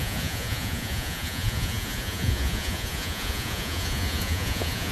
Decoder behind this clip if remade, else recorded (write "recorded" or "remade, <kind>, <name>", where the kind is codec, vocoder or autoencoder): remade, vocoder, Vocos